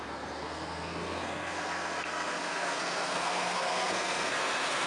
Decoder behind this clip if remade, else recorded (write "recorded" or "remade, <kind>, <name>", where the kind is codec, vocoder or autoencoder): remade, codec, SNAC